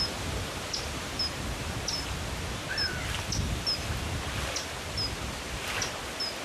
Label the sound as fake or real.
real